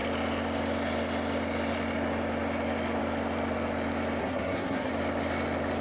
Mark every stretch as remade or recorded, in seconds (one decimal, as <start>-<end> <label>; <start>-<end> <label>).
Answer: 0.0-4.2 recorded; 4.2-4.9 remade; 4.9-5.8 recorded